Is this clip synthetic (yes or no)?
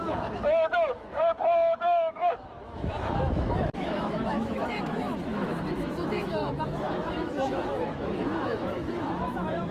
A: yes